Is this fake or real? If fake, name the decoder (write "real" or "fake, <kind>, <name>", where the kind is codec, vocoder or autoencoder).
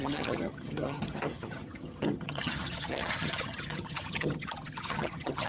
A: fake, vocoder, HiFi-GAN